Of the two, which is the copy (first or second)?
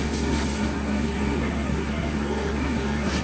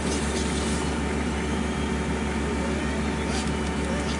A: first